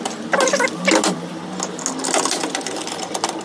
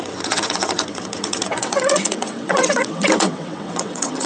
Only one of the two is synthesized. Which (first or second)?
second